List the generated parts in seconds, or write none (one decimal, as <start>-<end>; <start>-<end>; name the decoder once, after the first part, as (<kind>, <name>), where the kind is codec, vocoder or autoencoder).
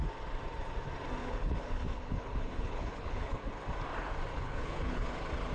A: 1.2-3.5 (codec, HILCodec); 4.3-5.1